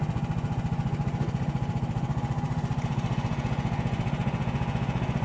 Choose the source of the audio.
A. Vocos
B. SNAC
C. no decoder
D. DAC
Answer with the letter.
A